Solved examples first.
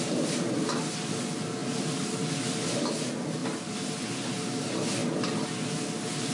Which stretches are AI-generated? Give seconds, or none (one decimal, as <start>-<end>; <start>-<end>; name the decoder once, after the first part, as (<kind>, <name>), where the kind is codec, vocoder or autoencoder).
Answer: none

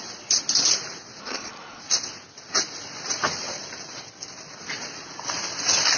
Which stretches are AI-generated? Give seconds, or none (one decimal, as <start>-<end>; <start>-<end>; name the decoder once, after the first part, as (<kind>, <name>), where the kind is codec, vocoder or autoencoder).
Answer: 1.2-1.8 (codec, HILCodec)

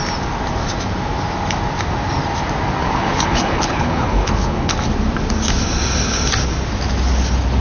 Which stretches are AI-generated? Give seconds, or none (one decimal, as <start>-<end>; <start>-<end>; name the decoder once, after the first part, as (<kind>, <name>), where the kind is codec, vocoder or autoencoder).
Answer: 2.8-4.7 (codec, HILCodec)

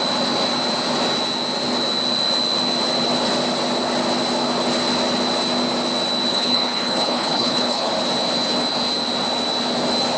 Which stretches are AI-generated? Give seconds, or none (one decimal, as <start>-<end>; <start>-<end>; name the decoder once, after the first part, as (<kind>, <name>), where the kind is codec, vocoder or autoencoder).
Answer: 6.3-7.9 (codec, HILCodec)

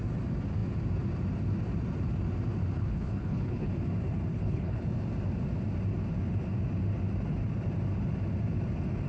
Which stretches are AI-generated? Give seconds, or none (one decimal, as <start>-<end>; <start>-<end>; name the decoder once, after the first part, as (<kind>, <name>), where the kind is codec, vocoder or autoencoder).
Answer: 2.8-3.7 (codec, HILCodec); 4.3-4.8

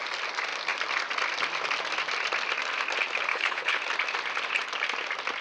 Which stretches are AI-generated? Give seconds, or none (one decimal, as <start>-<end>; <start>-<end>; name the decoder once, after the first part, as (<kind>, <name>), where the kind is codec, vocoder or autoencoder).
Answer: 3.3-3.8 (codec, HILCodec)

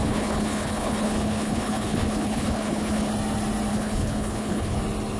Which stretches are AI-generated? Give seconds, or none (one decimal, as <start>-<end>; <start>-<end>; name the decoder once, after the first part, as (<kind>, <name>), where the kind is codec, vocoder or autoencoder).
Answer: 0.0-3.1 (codec, HILCodec); 3.7-4.8

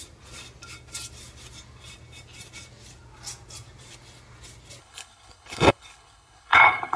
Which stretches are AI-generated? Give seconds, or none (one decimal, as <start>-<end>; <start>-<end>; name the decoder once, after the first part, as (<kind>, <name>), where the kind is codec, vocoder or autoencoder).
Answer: 4.8-7.0 (codec, HILCodec)